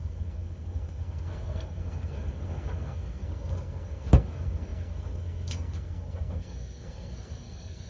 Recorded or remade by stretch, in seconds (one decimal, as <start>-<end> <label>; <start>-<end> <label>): 0.0-7.9 remade